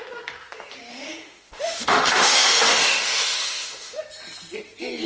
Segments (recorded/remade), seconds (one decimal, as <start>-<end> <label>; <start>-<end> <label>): 0.0-0.9 recorded; 0.9-4.0 remade; 4.0-5.1 recorded